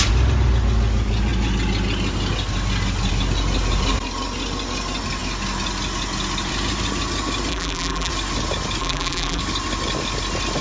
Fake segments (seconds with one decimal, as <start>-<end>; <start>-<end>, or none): 7.5-8.1; 8.8-9.4

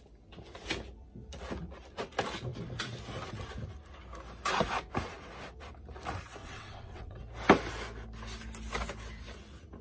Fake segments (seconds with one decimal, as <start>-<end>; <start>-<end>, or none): 6.4-7.2

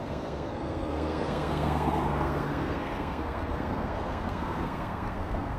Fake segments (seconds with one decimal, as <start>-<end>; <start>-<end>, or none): 0.0-5.6